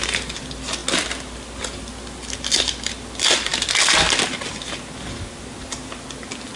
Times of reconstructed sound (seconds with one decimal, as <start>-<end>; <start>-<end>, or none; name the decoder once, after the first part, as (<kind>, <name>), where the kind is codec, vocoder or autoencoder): none